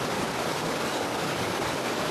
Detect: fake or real fake